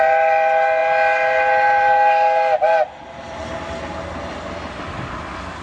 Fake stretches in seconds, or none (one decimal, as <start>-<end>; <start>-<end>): none